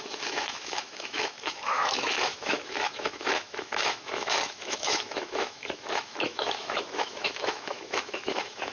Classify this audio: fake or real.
fake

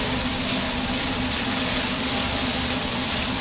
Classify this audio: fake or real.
fake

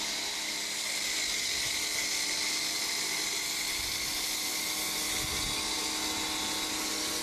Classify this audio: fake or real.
real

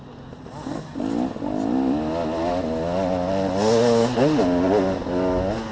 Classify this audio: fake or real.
real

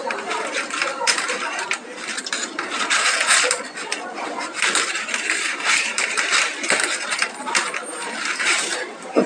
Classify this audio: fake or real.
fake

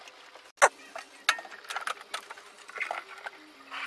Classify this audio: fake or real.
real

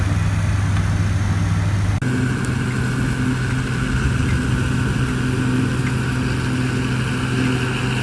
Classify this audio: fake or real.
real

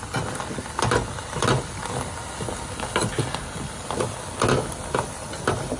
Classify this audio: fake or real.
real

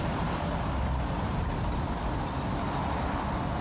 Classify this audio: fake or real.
fake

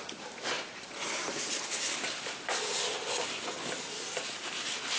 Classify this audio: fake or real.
real